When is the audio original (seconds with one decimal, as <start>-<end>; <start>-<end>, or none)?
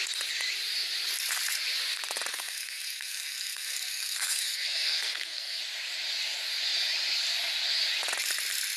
0.0-2.3; 5.6-8.8